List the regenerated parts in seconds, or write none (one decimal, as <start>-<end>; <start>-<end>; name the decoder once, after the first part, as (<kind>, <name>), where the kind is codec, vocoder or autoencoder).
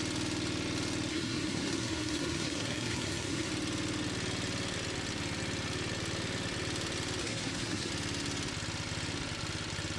1.1-3.5 (codec, SNAC); 7.2-7.9